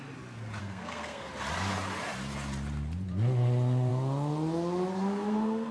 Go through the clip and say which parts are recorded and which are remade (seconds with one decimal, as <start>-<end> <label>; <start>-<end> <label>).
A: 0.0-0.6 recorded; 0.6-1.3 remade; 1.3-4.9 recorded; 4.9-5.7 remade